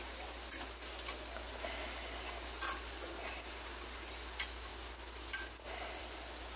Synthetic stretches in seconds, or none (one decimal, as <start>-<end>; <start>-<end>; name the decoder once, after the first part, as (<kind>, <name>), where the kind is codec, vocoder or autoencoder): none